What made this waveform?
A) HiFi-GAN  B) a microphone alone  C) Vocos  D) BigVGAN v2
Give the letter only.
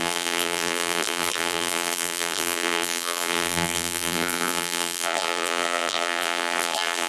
D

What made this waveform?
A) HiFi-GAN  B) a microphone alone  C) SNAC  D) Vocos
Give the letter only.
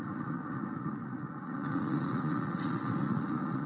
D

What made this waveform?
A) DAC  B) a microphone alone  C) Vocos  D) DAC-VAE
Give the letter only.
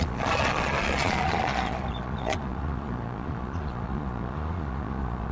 C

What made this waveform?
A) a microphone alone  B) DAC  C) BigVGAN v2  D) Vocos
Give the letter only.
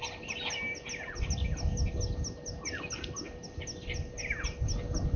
A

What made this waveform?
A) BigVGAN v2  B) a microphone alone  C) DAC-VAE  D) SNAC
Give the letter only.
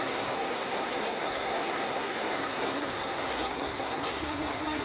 D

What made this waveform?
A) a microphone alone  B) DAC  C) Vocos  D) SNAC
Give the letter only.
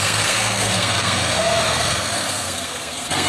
D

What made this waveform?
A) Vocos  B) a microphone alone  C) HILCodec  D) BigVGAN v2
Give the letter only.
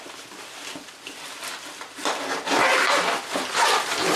B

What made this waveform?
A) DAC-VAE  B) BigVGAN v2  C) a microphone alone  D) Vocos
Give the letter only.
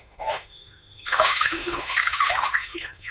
A